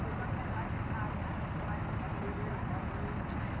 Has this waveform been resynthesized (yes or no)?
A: no